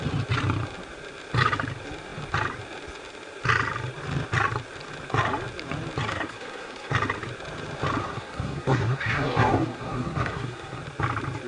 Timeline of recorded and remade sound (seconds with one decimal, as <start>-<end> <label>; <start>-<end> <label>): 0.0-6.1 recorded; 6.1-6.9 remade; 6.9-8.0 recorded; 8.0-10.8 remade; 10.8-11.5 recorded